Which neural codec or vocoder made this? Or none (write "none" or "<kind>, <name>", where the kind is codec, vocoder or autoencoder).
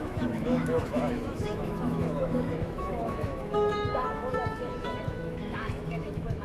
autoencoder, DAC-VAE